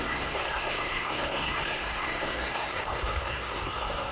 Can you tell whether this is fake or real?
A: fake